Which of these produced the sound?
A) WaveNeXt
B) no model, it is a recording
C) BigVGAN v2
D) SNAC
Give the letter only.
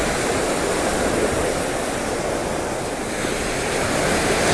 B